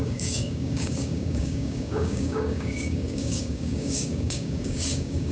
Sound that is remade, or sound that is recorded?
remade